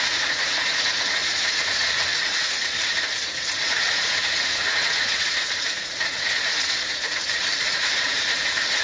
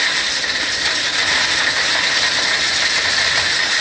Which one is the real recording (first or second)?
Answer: second